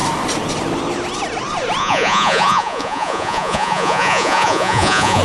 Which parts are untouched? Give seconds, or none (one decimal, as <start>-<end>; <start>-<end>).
0.0-1.8